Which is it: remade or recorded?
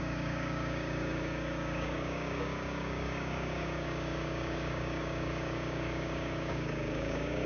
remade